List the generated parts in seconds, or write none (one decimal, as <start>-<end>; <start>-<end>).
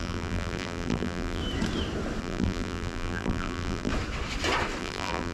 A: 0.0-1.4; 2.2-3.9; 4.8-5.3